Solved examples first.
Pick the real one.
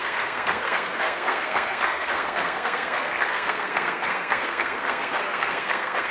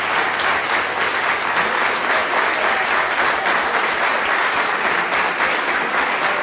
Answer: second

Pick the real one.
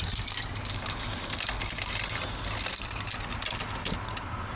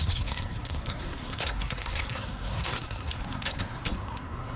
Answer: first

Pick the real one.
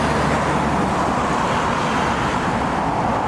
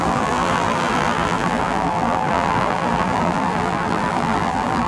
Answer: first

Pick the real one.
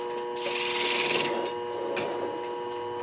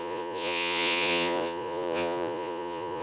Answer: first